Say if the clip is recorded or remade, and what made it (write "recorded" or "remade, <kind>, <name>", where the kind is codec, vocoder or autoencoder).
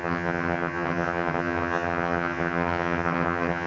remade, vocoder, HiFi-GAN